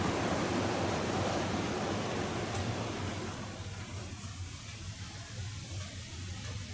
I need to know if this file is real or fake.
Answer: real